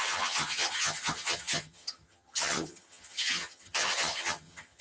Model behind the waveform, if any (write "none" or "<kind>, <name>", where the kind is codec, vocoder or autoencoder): vocoder, HiFi-GAN